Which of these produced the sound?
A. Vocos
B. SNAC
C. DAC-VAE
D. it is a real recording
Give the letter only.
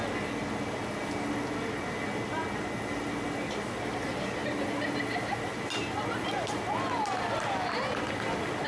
D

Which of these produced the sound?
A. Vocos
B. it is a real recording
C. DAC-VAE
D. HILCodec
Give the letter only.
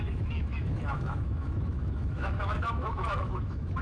C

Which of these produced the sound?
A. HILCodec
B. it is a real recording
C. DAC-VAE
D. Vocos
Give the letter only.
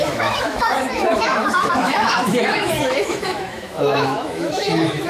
C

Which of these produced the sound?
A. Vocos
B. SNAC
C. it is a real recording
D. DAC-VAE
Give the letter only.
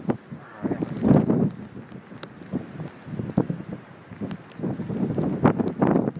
C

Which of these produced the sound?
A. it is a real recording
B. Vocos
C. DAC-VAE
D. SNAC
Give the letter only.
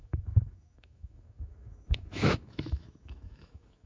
C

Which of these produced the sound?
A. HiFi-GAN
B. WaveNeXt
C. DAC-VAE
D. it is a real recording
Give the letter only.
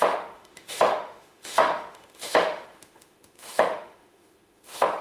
C